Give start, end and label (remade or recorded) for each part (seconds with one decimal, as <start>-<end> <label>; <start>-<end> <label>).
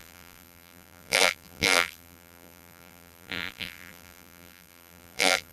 0.0-5.5 remade